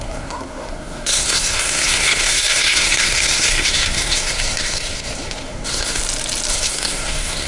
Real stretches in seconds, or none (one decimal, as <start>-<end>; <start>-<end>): 6.0-6.5